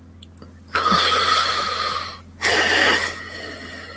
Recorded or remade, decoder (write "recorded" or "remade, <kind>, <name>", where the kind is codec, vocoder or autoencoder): recorded